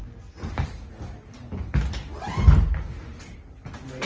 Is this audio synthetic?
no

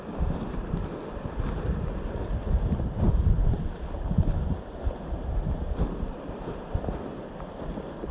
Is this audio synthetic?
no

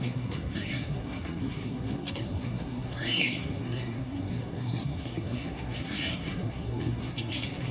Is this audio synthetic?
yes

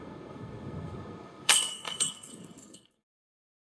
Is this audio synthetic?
yes